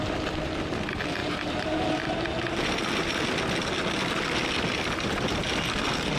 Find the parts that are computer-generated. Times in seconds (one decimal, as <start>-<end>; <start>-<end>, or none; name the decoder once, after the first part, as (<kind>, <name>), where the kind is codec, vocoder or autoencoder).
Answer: 1.2-2.7 (vocoder, BigVGAN v2)